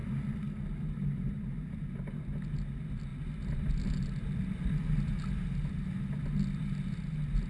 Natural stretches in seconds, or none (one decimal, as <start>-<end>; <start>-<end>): 0.0-7.5